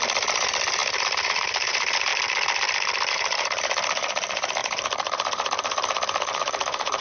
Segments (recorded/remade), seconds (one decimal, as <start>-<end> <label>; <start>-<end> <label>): 0.0-2.1 remade; 2.1-3.1 recorded; 3.1-7.0 remade